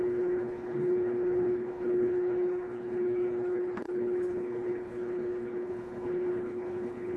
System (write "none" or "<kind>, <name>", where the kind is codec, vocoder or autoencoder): codec, HILCodec